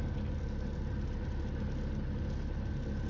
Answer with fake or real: real